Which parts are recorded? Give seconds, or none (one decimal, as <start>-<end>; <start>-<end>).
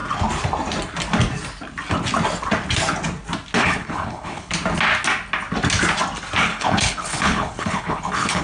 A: 0.0-3.6; 4.5-6.5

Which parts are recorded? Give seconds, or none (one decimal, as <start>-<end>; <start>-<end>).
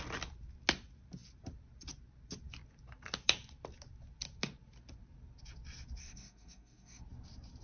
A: 0.0-6.0; 7.0-7.6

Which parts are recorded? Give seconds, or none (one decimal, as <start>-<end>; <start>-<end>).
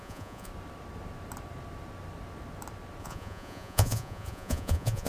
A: 0.5-3.0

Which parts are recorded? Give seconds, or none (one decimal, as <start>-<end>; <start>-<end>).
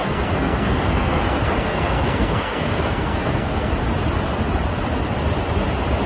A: 3.7-6.1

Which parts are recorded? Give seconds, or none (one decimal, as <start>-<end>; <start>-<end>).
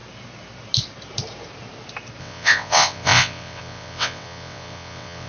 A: 0.0-2.2